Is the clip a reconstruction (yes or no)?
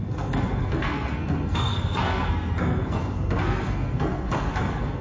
yes